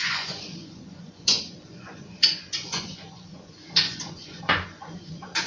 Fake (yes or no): yes